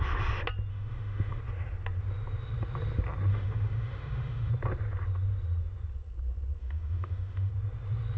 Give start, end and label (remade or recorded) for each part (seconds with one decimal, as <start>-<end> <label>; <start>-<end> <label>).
0.0-0.7 recorded; 0.7-1.4 remade; 1.4-3.3 recorded; 3.3-4.5 remade; 4.5-6.6 recorded; 6.6-7.5 remade; 7.5-8.2 recorded